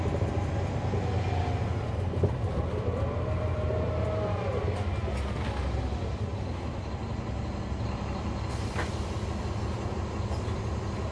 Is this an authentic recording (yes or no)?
yes